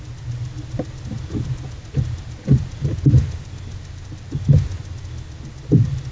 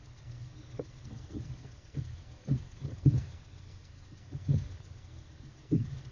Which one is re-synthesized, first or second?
second